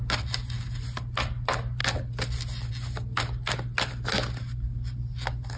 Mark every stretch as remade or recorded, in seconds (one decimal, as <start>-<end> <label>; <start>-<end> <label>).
0.0-5.6 recorded